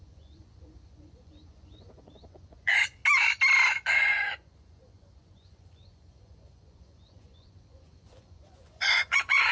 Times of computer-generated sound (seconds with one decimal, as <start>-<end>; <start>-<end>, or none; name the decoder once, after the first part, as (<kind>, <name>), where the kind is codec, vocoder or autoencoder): 0.0-3.0 (vocoder, Vocos); 3.7-9.5